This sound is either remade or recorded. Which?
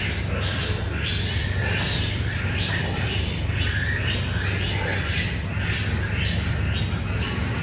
recorded